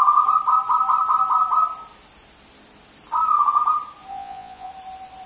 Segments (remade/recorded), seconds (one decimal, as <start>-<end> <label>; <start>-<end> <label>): 0.0-4.1 recorded; 4.1-4.7 remade; 4.7-5.3 recorded